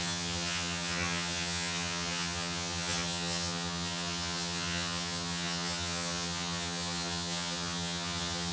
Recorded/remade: remade